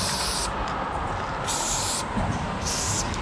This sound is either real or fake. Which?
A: real